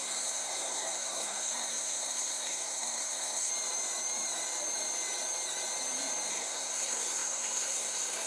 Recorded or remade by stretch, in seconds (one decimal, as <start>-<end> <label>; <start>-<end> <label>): 0.0-3.5 remade; 3.5-6.3 recorded; 6.3-8.3 remade